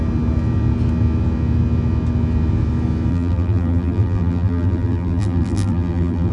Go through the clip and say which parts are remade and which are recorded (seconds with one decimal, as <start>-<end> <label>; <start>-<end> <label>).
0.0-3.1 recorded; 3.1-6.3 remade